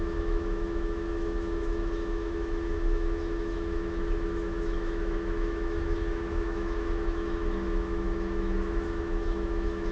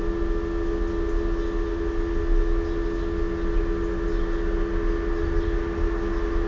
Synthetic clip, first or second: first